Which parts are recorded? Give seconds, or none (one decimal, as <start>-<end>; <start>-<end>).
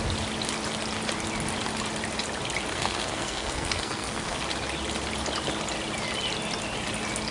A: 0.0-2.7; 4.4-7.3